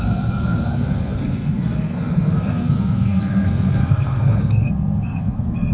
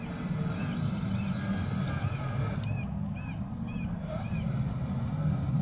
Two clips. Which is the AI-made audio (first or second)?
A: first